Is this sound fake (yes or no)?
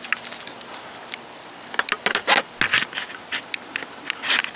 no